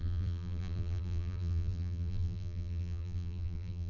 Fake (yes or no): yes